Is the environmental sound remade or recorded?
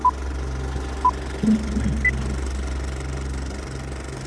recorded